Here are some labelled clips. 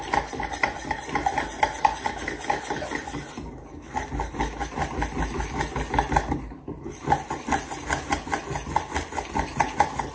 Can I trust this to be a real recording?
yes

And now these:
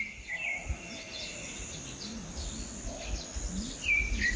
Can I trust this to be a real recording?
yes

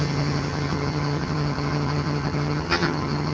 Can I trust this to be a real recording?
no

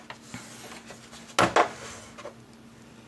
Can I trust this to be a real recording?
yes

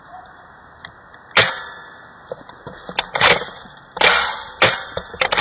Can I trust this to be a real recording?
yes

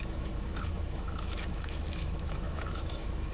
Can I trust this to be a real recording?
no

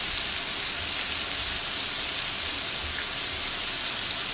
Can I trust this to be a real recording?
yes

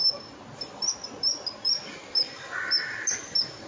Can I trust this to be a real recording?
yes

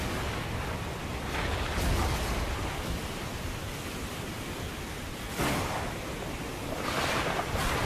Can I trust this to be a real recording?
yes